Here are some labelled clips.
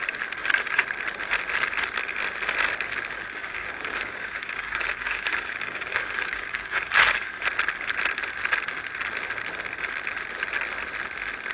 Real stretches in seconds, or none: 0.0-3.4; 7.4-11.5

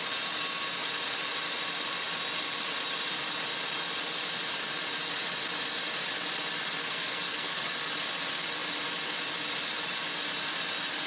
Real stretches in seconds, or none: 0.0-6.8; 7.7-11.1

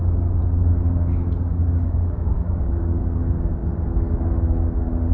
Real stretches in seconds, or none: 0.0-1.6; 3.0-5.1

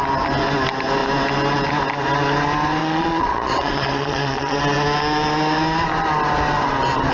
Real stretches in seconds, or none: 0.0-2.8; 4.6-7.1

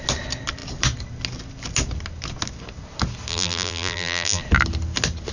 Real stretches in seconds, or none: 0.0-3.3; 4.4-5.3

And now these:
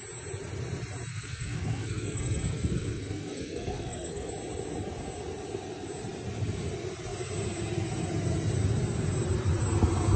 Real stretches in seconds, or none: 0.0-1.1; 4.3-10.2

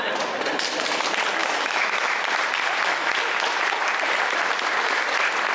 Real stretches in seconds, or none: 0.0-1.4; 2.2-5.5

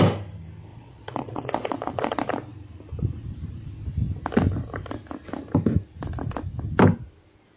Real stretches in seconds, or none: 0.0-0.7; 2.1-7.6